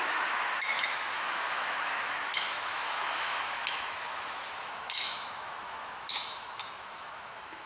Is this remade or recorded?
remade